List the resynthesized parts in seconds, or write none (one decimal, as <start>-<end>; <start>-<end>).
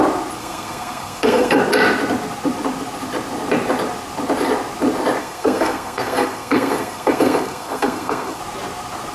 0.4-1.6; 5.2-8.4